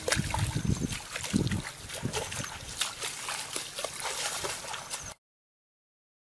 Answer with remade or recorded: recorded